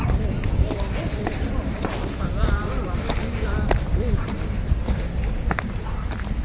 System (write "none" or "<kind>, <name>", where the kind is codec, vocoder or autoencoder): vocoder, BigVGAN v2